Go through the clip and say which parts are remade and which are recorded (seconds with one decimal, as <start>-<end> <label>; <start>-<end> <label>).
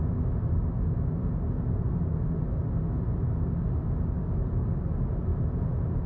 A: 0.0-6.1 recorded